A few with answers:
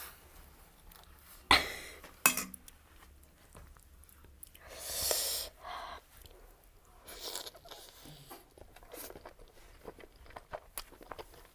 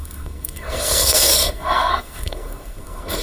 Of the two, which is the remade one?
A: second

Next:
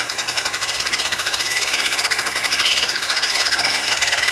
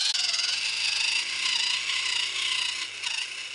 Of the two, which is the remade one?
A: first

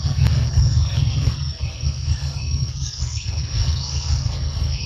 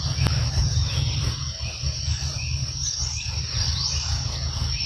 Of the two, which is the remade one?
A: first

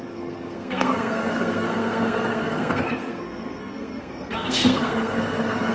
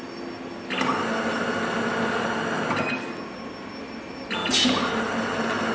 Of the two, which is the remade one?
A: first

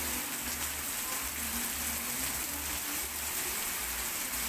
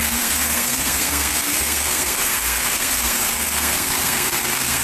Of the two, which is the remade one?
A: second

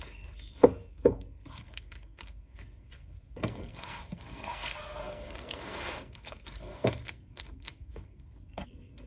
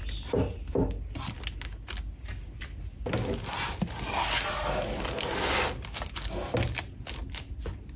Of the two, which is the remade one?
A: first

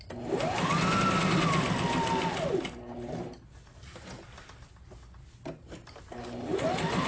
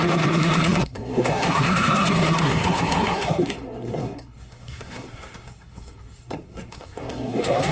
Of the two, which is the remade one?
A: second